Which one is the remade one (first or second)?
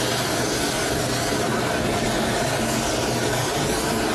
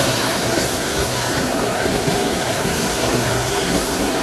second